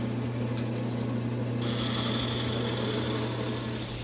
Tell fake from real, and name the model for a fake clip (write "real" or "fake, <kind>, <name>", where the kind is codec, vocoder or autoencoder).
real